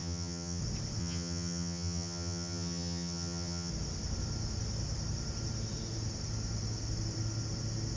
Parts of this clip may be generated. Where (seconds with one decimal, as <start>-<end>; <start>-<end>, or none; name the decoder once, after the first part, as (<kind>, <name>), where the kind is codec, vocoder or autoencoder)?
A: 0.0-0.6 (vocoder, HiFi-GAN); 1.0-3.7